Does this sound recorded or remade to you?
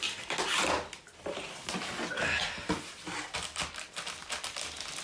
recorded